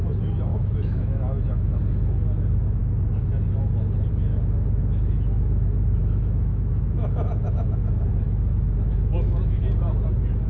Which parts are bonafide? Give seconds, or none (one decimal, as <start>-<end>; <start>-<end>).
0.0-0.5; 1.8-6.0; 7.3-8.1; 9.6-10.5

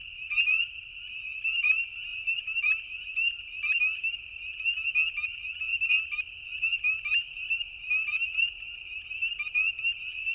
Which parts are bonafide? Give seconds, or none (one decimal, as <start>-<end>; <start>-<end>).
0.0-2.1; 4.0-5.7; 7.9-10.3

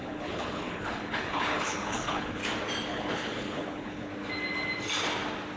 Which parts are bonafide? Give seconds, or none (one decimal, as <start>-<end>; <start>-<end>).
2.4-2.9; 4.1-5.6

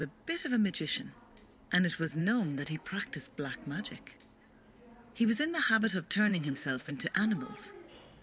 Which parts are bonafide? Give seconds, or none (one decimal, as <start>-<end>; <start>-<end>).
0.0-2.2; 3.0-6.3; 6.9-8.2

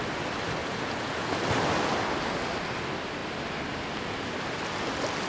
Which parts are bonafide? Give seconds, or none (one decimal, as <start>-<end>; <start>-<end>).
0.0-0.6; 1.3-5.3